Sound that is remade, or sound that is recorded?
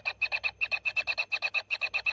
recorded